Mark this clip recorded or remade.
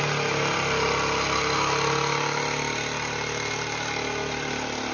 recorded